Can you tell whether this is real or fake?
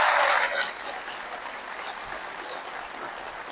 real